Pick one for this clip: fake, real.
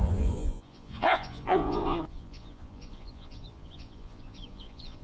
fake